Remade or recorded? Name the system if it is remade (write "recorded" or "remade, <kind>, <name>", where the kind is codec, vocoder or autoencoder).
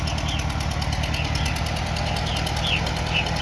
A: recorded